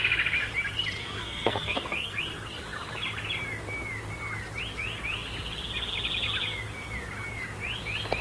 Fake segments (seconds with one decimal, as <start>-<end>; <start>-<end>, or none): 1.0-2.2